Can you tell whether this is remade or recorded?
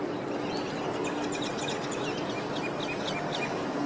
recorded